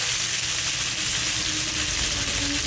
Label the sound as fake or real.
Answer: real